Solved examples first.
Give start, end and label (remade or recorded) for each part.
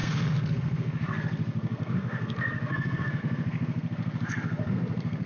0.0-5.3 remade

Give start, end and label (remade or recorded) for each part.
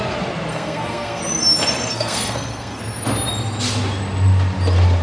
0.0-0.5 recorded; 0.5-1.2 remade; 1.2-1.9 recorded; 1.9-2.8 remade; 2.8-5.0 recorded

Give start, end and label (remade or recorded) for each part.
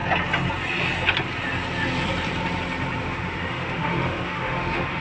0.0-3.0 recorded; 3.0-5.0 remade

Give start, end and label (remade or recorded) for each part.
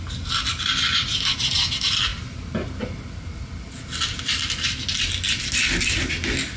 0.0-6.6 recorded